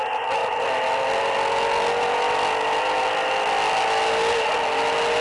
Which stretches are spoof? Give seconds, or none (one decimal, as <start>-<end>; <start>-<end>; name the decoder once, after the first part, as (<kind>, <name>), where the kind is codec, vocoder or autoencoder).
none